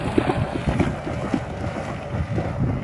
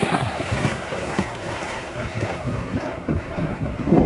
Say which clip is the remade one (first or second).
second